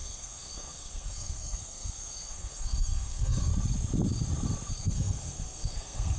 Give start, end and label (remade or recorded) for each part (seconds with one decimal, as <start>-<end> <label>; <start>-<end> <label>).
0.0-3.5 remade; 3.5-4.8 recorded; 4.8-6.2 remade